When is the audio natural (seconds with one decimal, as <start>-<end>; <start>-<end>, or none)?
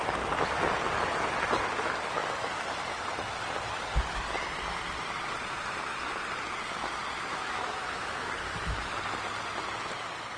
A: 0.0-7.3; 8.3-10.4